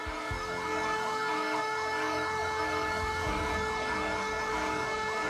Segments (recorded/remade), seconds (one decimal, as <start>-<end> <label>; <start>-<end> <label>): 0.0-5.3 remade